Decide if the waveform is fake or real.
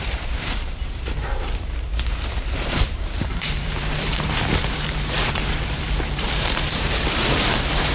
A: fake